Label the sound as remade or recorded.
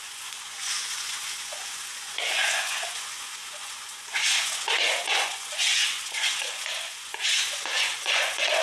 remade